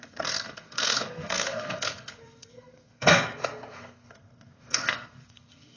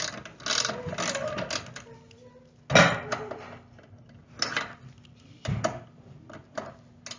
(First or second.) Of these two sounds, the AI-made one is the first